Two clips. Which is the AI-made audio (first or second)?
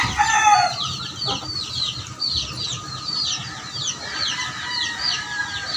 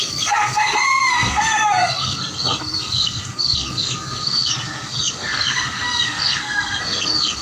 second